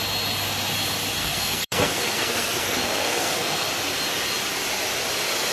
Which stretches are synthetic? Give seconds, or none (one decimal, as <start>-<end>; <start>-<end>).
1.2-3.7

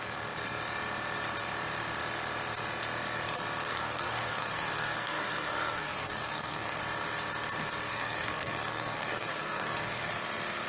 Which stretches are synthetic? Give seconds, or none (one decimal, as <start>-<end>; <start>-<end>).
3.7-6.8; 7.9-10.1